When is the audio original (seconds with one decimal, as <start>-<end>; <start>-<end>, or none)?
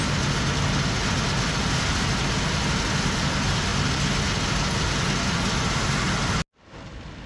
0.0-7.3